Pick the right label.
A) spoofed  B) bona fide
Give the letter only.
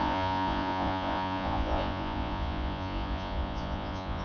A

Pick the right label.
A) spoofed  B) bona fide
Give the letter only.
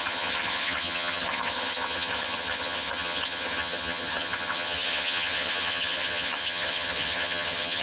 A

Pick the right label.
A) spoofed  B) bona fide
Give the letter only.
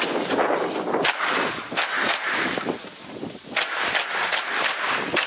B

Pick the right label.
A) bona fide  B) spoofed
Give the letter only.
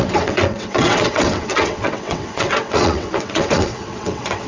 B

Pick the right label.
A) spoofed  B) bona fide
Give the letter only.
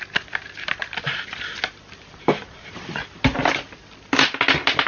B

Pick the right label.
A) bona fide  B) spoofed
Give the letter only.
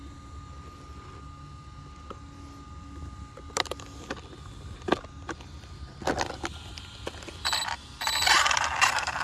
A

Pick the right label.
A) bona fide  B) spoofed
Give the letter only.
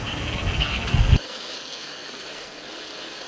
B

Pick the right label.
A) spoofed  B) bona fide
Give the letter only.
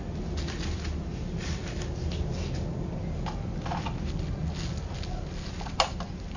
B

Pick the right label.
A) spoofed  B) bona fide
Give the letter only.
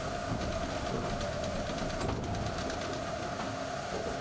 B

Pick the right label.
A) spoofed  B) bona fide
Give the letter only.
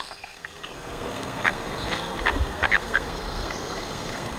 A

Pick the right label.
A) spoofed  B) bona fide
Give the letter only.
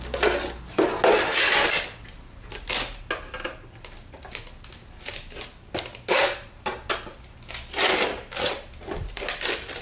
B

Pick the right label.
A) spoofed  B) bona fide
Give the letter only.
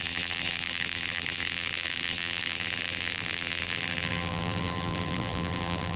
A